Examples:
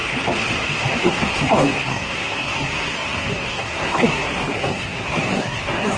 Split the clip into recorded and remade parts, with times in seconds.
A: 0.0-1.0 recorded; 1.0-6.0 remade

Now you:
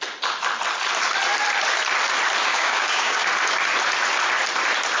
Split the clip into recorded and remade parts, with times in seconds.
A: 0.0-2.5 recorded; 2.5-3.2 remade; 3.2-5.0 recorded

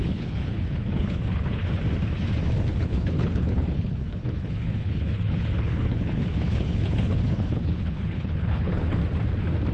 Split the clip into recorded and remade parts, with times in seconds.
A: 0.0-1.6 remade; 1.6-2.8 recorded; 2.8-9.0 remade; 9.0-9.7 recorded

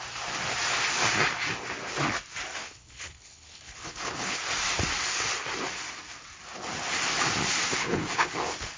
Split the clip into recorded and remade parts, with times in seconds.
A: 0.0-2.6 recorded; 2.6-4.4 remade; 4.4-7.8 recorded; 7.8-8.3 remade; 8.3-8.8 recorded

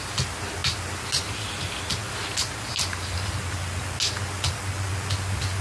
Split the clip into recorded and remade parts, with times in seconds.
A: 0.0-5.6 recorded

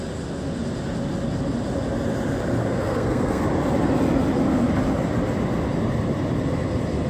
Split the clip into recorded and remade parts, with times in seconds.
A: 0.0-2.6 recorded; 2.6-3.4 remade; 3.4-7.1 recorded

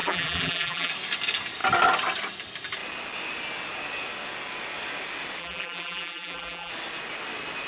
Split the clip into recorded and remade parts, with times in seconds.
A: 0.0-0.9 remade; 0.9-5.4 recorded; 5.4-6.7 remade; 6.7-7.7 recorded